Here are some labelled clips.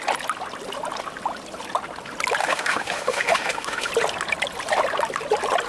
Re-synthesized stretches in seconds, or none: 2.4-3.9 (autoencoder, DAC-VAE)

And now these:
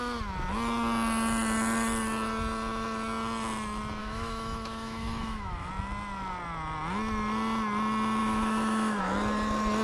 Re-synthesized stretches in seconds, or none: 4.0-5.7 (autoencoder, DAC-VAE); 8.2-9.0

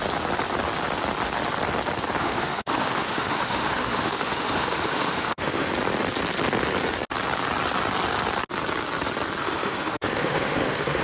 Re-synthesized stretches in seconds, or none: 2.2-5.7 (autoencoder, DAC-VAE); 9.4-11.0

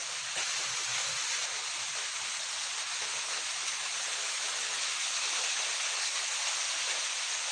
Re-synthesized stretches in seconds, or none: 2.9-5.6 (autoencoder, DAC-VAE)

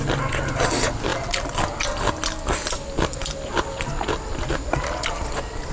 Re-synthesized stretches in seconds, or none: none